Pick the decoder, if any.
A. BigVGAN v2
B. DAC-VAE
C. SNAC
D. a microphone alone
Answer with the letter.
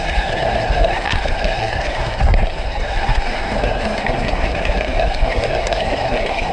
C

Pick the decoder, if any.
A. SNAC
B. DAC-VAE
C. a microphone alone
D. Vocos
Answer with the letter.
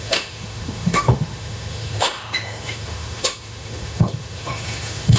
B